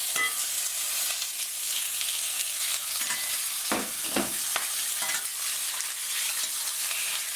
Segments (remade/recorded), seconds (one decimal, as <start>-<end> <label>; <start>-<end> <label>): 0.0-1.5 recorded; 1.5-3.0 remade; 3.0-3.8 recorded; 3.8-4.4 remade; 4.4-7.4 recorded